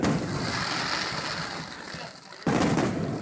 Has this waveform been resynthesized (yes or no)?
no